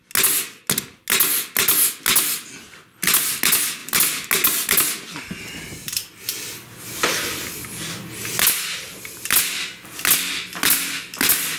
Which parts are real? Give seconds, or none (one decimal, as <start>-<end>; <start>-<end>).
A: 0.0-11.6